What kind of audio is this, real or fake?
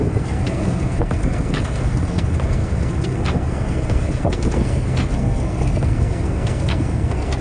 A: fake